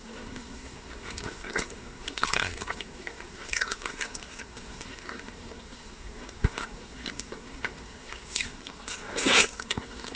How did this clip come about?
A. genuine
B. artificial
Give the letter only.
B